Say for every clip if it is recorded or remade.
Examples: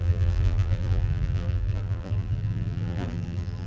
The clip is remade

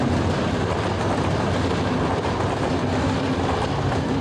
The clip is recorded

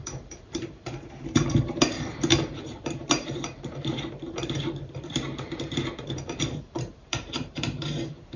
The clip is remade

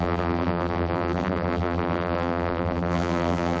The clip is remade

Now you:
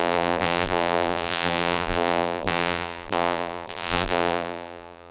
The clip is remade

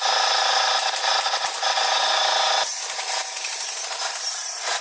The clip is recorded